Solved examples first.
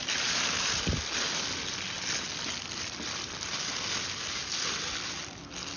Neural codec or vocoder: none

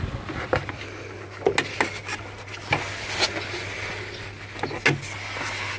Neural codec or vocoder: none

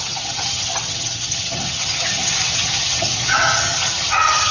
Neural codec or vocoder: vocoder, HiFi-GAN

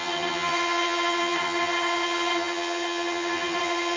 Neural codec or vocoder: vocoder, HiFi-GAN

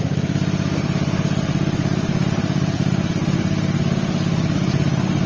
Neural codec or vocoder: none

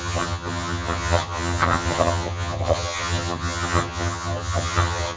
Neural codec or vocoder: vocoder, HiFi-GAN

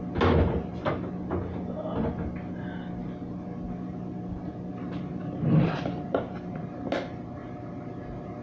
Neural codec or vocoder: none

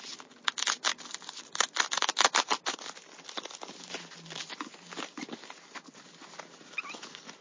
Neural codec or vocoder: none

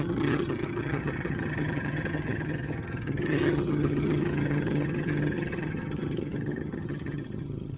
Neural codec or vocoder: vocoder, HiFi-GAN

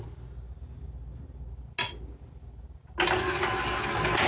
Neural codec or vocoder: none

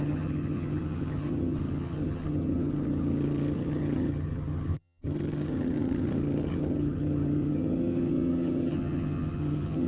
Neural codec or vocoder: vocoder, HiFi-GAN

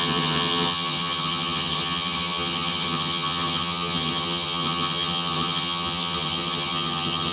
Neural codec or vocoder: vocoder, HiFi-GAN